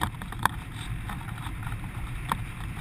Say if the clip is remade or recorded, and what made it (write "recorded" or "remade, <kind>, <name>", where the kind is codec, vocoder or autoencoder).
remade, vocoder, BigVGAN v2